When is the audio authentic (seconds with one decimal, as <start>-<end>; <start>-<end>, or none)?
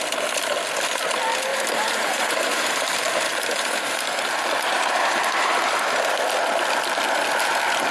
0.0-1.5; 6.2-7.9